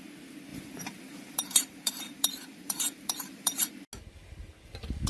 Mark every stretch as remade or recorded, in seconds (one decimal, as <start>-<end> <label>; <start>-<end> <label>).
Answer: 0.0-0.5 recorded; 0.5-3.6 remade; 3.6-5.1 recorded